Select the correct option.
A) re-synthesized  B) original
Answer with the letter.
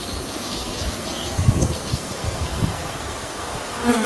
A